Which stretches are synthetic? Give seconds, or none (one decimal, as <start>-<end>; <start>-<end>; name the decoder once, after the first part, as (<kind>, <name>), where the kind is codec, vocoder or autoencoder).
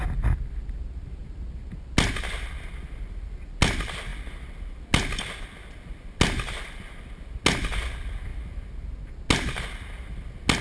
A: none